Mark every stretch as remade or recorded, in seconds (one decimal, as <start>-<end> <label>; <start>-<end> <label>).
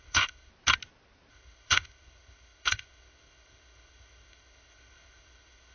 0.0-0.5 remade; 0.5-1.3 recorded; 1.3-5.7 remade